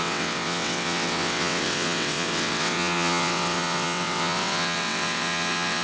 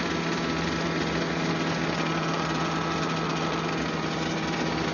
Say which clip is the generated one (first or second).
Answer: first